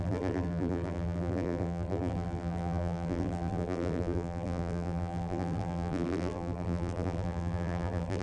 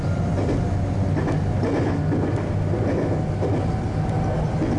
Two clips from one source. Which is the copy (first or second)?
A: first